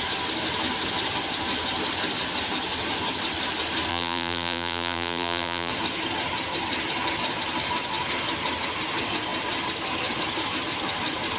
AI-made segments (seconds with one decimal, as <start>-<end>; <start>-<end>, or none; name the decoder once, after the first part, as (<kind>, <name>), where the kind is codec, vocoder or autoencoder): 3.9-5.7 (vocoder, BigVGAN v2)